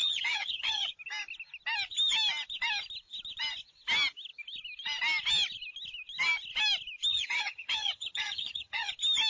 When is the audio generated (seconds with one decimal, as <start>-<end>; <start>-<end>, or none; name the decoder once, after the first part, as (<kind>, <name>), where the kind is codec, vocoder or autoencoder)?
0.0-0.9 (vocoder, HiFi-GAN); 7.1-8.9